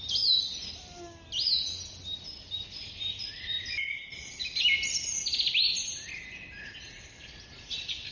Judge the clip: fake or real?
real